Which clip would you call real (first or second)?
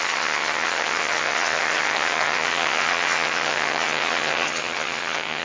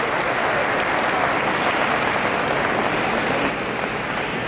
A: second